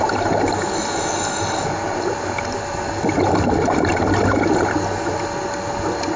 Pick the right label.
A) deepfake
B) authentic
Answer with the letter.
B